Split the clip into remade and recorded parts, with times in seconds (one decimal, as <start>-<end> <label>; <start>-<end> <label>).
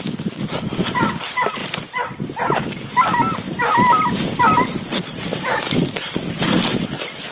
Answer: 0.0-1.6 recorded; 1.6-2.4 remade; 2.4-5.3 recorded; 5.3-7.3 remade